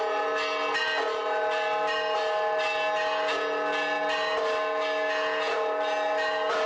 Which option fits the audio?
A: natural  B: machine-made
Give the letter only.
A